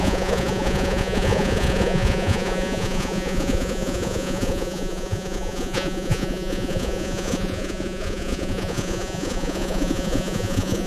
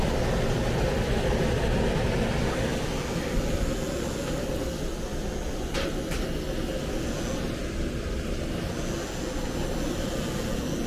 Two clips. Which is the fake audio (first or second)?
first